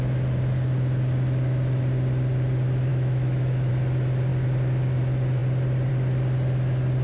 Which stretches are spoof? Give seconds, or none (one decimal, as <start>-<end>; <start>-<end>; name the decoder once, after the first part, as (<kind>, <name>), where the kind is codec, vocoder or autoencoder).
2.9-3.7 (autoencoder, DAC-VAE)